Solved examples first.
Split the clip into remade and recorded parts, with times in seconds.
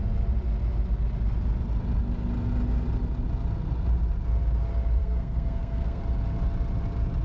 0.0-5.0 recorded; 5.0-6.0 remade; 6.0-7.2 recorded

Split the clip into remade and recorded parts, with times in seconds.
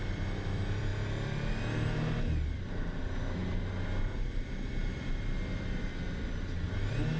0.0-7.2 recorded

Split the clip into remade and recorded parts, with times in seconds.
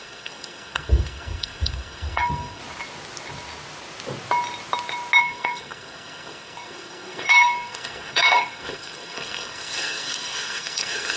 0.0-2.6 remade; 2.6-5.2 recorded; 5.2-11.2 remade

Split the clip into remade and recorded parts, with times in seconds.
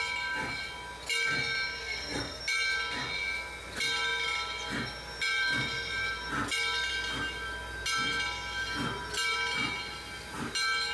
0.0-1.8 recorded; 1.8-2.4 remade; 2.4-10.9 recorded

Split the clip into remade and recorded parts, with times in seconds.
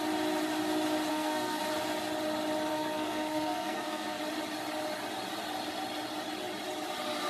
0.0-1.1 recorded; 1.1-1.6 remade; 1.6-2.7 recorded; 2.7-4.2 remade; 4.2-7.3 recorded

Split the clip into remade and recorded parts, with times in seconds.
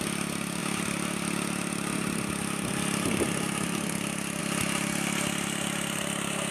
0.0-6.5 recorded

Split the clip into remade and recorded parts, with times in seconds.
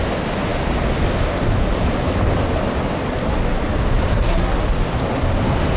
0.0-4.1 recorded; 4.1-4.6 remade; 4.6-5.8 recorded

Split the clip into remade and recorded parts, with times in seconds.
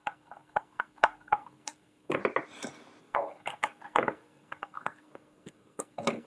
0.0-2.2 remade; 2.2-3.0 recorded; 3.0-6.3 remade